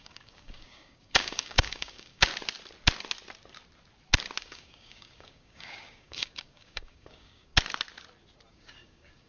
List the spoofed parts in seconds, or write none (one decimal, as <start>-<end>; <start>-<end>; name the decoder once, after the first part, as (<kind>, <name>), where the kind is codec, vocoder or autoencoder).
0.0-2.3 (codec, DAC); 4.4-7.5; 8.5-9.3